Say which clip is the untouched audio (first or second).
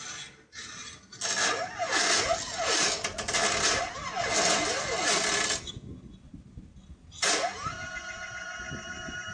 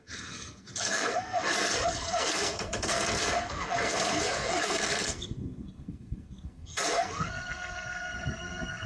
first